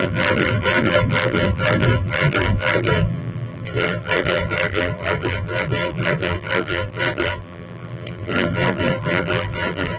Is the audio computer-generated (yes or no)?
yes